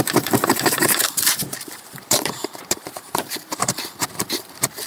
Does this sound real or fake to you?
fake